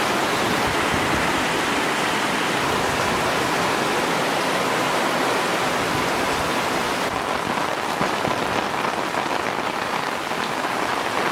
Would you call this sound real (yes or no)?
no